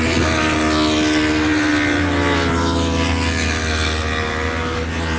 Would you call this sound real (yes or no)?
yes